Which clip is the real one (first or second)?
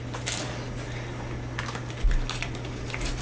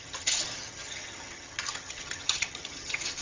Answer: first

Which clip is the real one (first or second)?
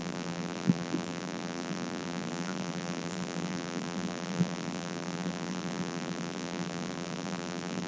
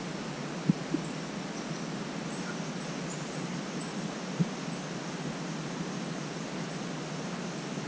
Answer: second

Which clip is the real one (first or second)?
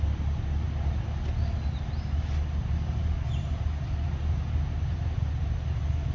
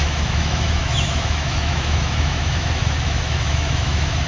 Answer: first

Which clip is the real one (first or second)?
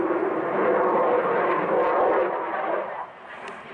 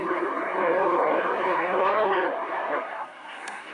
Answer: first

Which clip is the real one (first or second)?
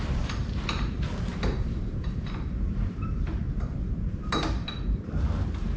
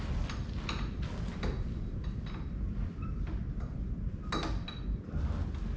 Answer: second